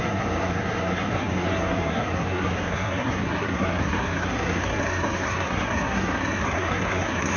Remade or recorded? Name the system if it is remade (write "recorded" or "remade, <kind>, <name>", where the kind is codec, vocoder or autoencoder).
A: remade, codec, SNAC